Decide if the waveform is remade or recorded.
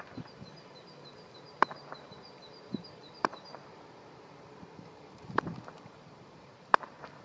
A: remade